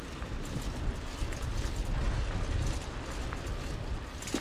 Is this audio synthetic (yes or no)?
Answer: no